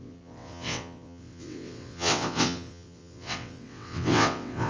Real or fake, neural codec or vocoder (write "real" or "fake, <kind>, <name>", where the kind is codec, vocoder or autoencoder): fake, vocoder, WaveNeXt